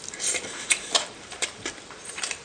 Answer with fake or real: fake